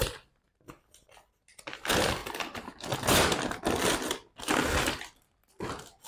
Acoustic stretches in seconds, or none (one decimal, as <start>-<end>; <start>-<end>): 0.0-6.1